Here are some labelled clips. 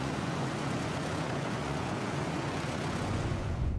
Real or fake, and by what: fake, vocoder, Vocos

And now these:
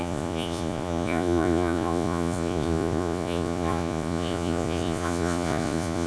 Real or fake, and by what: fake, vocoder, Vocos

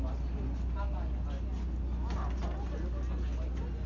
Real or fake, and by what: real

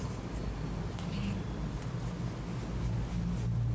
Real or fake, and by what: real